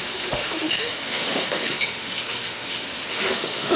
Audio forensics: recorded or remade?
remade